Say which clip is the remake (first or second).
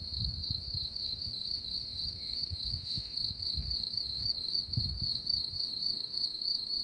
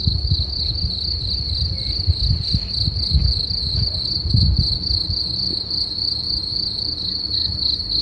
first